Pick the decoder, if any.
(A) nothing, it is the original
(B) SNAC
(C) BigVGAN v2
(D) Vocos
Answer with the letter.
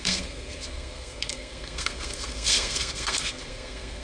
B